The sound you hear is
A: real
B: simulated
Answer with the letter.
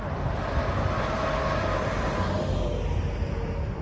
A